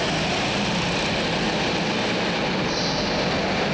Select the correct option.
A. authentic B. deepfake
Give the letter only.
A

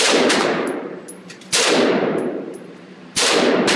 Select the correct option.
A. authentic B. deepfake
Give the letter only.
B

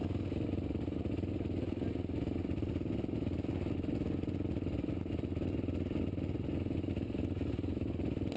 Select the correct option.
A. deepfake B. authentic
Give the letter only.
B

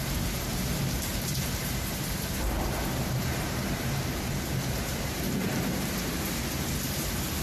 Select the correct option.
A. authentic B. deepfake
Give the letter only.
B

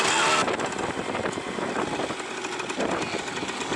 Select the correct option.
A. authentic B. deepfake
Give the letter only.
A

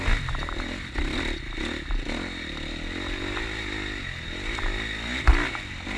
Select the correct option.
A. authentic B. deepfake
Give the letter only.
A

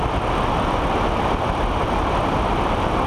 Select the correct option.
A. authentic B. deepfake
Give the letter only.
A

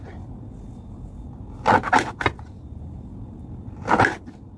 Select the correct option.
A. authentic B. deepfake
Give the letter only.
A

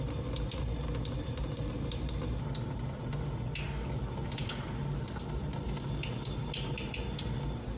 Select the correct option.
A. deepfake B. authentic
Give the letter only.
B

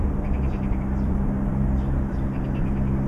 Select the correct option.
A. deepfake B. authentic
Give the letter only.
A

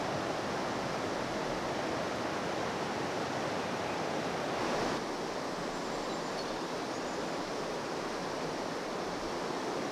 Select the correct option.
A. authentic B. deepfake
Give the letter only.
A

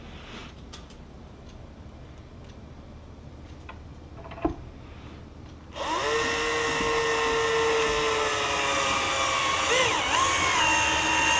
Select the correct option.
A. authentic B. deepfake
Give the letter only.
A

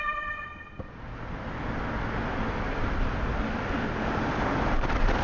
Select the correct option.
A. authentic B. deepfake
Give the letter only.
B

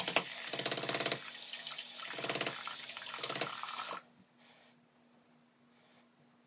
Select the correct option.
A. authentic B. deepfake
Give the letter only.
A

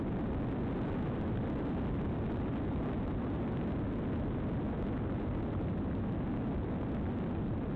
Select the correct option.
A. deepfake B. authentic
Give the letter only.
B